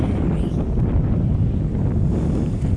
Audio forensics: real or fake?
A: real